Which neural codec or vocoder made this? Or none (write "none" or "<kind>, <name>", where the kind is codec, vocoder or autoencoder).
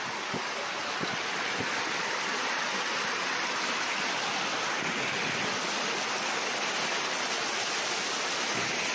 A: none